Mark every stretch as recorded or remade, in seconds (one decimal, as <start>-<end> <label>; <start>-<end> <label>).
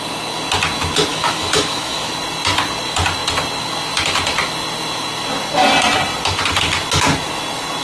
0.0-1.1 recorded; 1.1-2.1 remade; 2.1-7.8 recorded